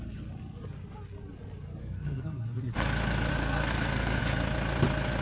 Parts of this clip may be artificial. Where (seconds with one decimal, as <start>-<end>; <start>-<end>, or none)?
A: 1.8-2.6; 3.3-4.2